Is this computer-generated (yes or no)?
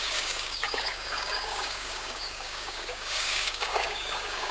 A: yes